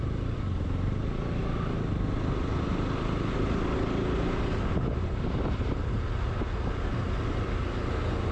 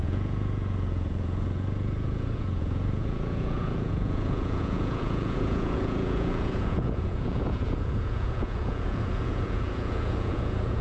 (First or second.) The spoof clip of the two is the second